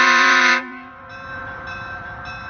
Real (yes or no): no